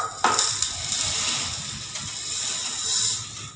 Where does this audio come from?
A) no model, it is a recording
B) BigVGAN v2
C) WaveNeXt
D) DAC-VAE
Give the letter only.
A